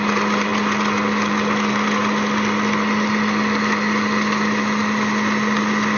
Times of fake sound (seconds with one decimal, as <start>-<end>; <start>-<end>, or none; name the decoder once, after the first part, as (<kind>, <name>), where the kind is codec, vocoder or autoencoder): none